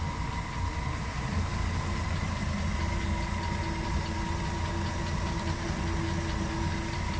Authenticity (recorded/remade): recorded